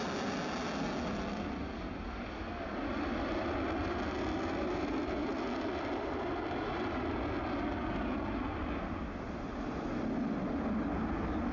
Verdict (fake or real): real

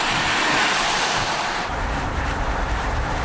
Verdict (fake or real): fake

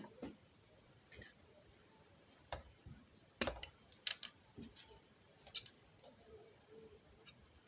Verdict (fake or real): real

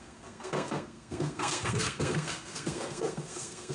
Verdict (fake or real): fake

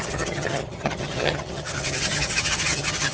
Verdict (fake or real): fake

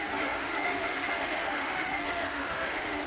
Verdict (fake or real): fake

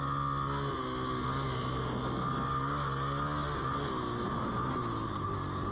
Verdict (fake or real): real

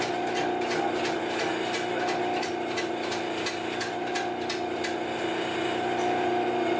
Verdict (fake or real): real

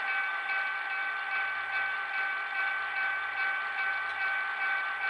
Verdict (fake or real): real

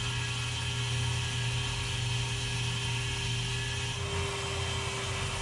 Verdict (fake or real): real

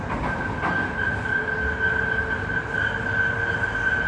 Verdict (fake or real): real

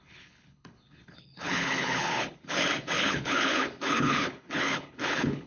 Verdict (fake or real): fake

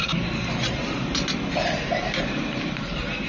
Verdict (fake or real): real